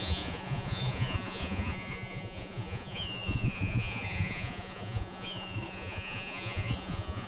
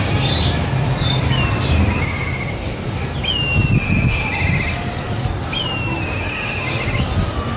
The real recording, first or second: second